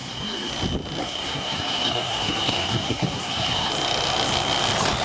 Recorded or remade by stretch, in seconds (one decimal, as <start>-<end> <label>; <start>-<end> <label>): 0.0-0.5 remade; 0.5-1.0 recorded; 1.0-3.7 remade; 3.7-5.0 recorded